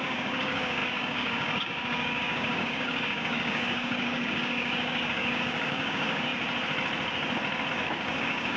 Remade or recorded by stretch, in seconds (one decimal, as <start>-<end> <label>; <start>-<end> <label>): 0.0-6.3 remade; 6.3-7.7 recorded; 7.7-8.6 remade